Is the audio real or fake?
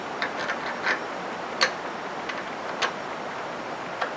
real